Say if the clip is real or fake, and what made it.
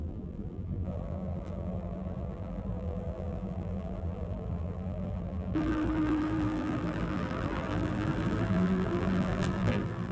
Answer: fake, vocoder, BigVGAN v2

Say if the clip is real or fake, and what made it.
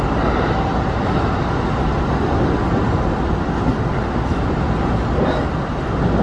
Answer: real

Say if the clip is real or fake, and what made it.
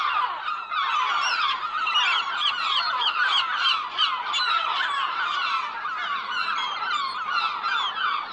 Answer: real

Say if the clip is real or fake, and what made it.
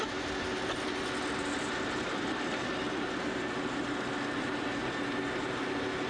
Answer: real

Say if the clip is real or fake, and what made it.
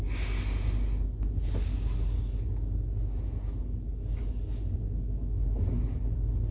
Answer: real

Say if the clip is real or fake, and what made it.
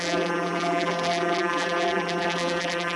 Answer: fake, vocoder, BigVGAN v2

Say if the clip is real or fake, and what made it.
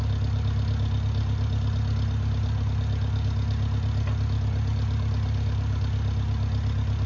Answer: real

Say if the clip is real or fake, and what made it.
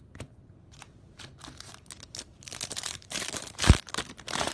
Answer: fake, vocoder, BigVGAN v2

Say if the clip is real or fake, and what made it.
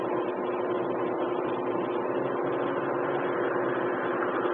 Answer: real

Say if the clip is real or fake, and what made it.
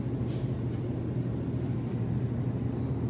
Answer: real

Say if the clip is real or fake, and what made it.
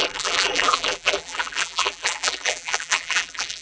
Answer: fake, vocoder, BigVGAN v2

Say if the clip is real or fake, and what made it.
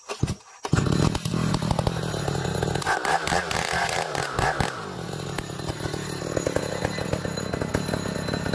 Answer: real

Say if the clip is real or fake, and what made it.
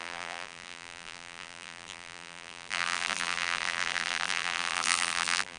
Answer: fake, vocoder, BigVGAN v2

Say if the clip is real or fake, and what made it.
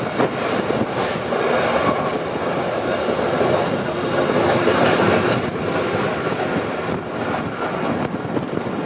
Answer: real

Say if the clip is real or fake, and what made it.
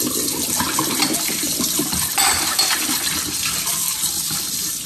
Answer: real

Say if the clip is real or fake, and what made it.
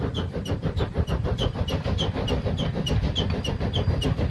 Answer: real